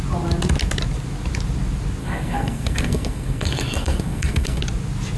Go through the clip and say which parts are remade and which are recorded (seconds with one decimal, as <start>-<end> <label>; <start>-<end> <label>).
0.0-2.0 recorded; 2.0-4.6 remade; 4.6-5.2 recorded